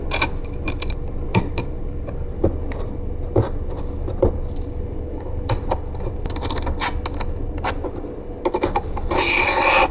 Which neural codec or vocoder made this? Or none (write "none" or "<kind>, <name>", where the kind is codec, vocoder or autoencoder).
none